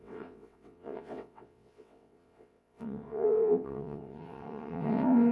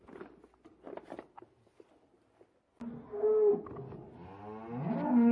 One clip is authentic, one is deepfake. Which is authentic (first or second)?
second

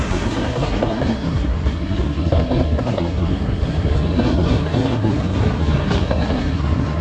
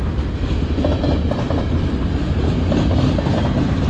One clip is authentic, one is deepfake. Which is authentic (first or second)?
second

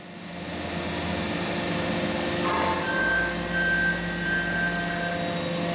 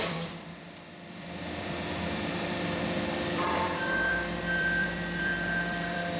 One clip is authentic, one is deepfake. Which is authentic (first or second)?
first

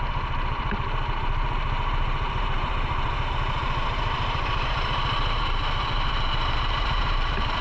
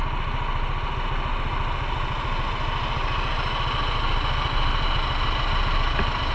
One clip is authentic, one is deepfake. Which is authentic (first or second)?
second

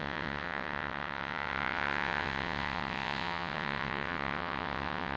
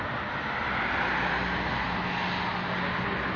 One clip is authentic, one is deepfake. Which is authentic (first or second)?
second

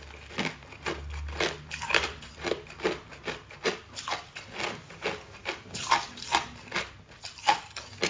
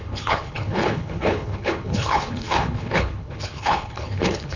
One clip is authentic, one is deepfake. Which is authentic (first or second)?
first